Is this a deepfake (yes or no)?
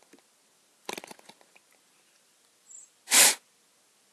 no